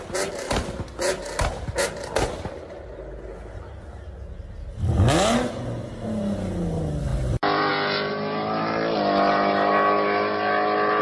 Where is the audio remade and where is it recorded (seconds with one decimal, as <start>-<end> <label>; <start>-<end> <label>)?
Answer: 0.0-7.1 recorded; 7.1-7.7 remade; 7.7-11.0 recorded